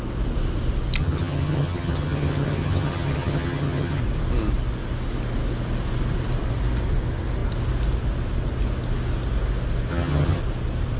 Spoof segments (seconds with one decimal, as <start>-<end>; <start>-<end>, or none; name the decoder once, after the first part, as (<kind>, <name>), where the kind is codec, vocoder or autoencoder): 1.0-4.0 (vocoder, HiFi-GAN); 9.9-10.4